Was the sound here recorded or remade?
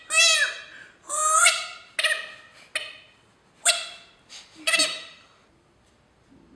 recorded